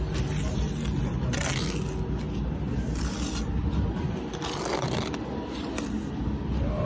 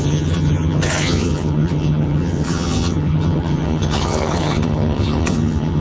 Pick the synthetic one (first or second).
second